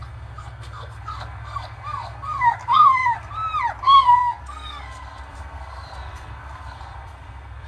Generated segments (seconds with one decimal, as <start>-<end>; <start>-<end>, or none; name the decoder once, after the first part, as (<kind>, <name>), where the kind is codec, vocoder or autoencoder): 0.0-3.3 (codec, SNAC); 3.8-7.7